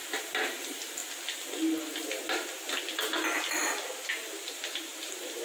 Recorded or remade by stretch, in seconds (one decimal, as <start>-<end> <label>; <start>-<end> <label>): 0.0-0.5 recorded; 0.5-1.0 remade; 1.0-4.1 recorded; 4.1-5.4 remade